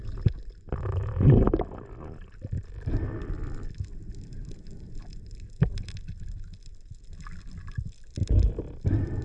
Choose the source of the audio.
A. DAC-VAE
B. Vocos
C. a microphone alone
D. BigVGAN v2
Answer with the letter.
C